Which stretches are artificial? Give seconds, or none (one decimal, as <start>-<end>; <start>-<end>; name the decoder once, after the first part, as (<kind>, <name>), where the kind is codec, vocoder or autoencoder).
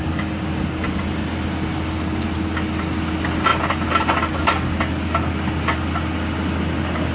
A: none